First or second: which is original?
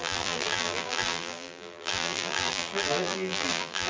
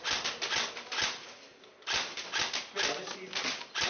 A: second